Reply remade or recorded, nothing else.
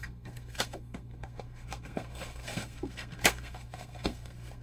remade